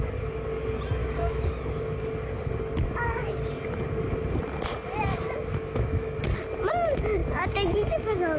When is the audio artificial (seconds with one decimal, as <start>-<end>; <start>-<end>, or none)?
1.0-1.7; 5.1-6.2